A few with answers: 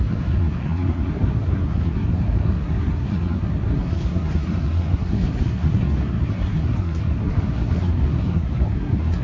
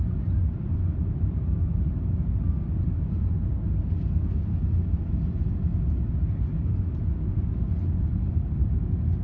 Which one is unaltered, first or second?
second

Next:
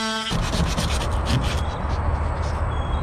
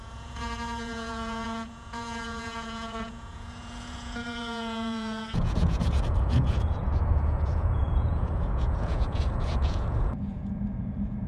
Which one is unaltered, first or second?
first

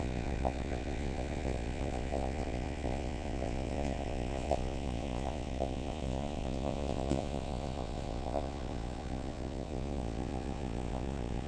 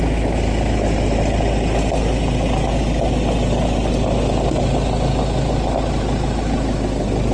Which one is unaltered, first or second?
second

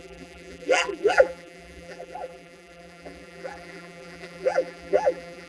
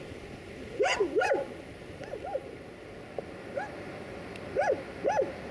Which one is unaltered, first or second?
second